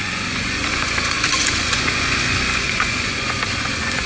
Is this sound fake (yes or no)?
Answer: yes